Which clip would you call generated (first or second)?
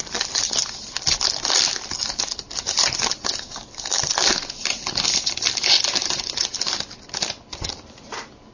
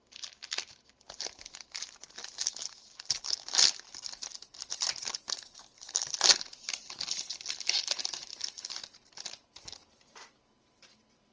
first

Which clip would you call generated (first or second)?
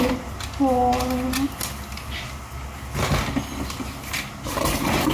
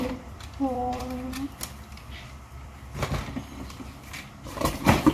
second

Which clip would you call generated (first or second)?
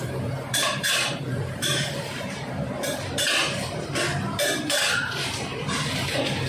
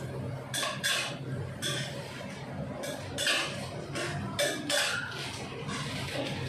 first